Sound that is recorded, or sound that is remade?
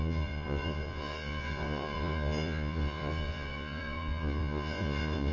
remade